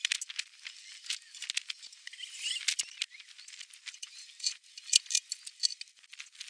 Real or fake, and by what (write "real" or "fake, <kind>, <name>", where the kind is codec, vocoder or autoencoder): real